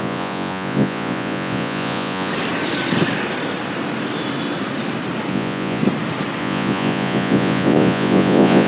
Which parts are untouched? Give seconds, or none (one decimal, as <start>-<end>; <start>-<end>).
2.3-5.3; 5.8-6.4